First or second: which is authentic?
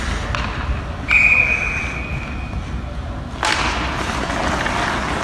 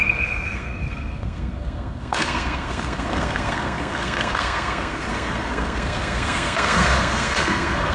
first